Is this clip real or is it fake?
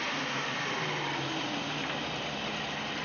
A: real